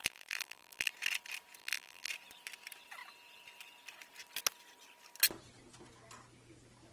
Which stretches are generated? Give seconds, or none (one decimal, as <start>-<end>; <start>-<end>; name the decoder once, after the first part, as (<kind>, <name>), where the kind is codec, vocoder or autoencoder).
0.0-0.9 (vocoder, BigVGAN v2); 1.6-2.1